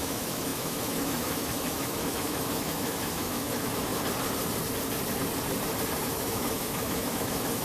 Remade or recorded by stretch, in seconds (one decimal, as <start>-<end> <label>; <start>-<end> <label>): 0.0-3.9 remade; 3.9-6.0 recorded; 6.0-7.6 remade